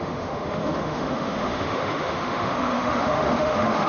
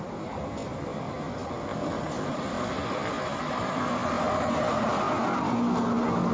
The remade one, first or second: first